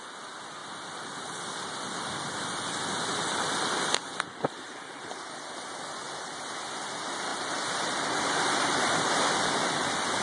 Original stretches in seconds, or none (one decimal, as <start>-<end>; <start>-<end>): 0.0-0.6; 5.5-7.3; 9.6-10.2